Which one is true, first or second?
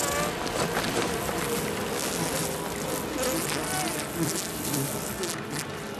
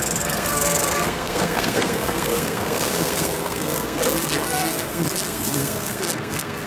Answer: first